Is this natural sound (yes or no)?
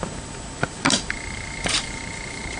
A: no